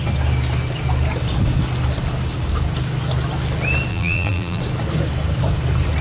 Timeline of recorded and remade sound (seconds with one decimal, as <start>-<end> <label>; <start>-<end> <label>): 0.0-3.9 recorded; 3.9-4.6 remade; 4.6-6.0 recorded